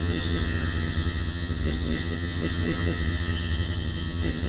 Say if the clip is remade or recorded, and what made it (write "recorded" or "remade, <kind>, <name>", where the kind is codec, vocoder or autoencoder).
remade, vocoder, HiFi-GAN